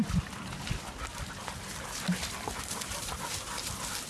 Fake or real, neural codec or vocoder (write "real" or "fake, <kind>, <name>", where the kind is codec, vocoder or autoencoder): real